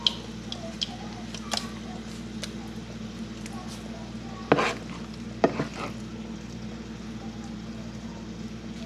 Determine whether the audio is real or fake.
real